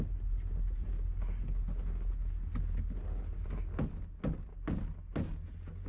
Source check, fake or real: real